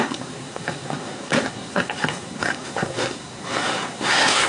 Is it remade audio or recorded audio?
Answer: remade